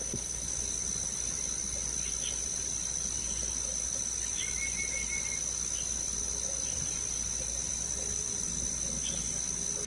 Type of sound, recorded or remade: recorded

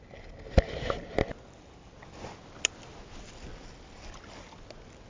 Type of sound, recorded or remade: recorded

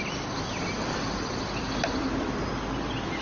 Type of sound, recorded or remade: recorded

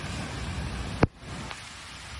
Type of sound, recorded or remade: recorded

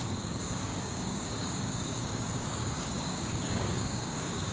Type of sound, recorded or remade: remade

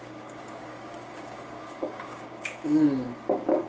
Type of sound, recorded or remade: remade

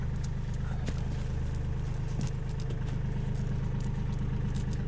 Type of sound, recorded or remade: recorded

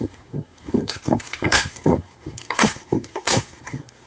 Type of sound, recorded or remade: remade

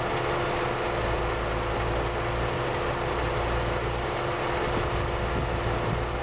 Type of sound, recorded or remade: recorded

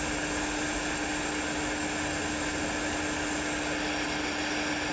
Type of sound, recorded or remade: recorded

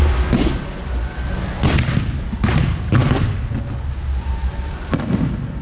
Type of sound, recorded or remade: recorded